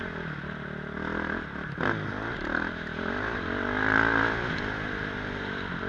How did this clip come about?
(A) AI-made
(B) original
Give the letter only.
B